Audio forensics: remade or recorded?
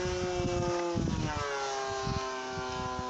recorded